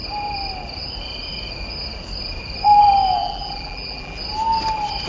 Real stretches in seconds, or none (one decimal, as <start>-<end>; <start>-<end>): 0.0-3.2; 4.2-5.1